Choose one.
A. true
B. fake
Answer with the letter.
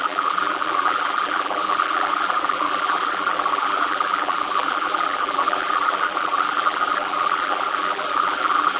B